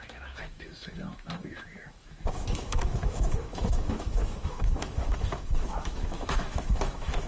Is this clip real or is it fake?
fake